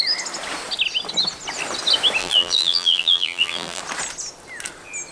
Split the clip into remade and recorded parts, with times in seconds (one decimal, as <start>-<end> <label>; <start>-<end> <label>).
0.0-2.2 recorded; 2.2-3.8 remade; 3.8-5.1 recorded